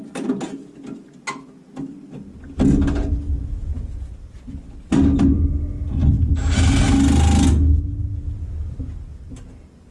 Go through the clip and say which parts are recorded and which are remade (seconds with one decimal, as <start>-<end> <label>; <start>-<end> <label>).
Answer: 0.0-9.9 recorded